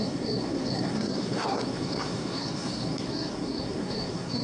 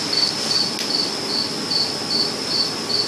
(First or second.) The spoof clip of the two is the first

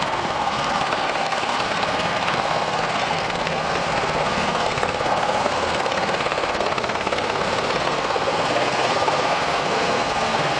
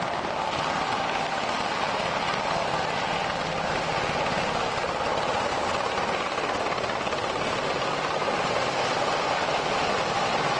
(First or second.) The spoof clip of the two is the first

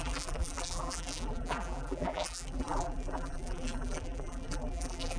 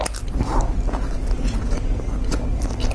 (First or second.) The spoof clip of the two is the first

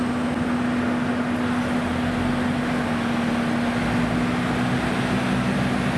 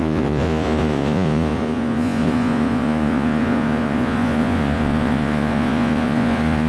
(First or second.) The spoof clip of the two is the second